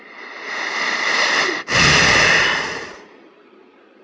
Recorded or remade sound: remade